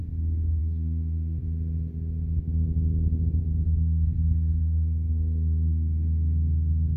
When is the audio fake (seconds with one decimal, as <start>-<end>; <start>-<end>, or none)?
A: 0.6-1.4; 3.4-7.0